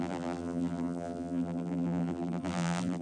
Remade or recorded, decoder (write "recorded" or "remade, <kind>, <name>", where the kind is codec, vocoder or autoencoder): remade, vocoder, BigVGAN v2